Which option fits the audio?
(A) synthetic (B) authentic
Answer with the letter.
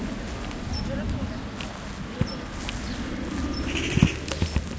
B